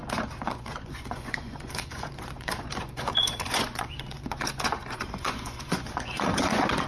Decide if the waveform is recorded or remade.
remade